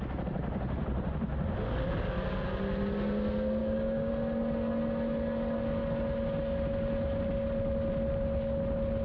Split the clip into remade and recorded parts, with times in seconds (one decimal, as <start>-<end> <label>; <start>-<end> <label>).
0.0-3.6 recorded; 3.6-4.1 remade; 4.1-9.0 recorded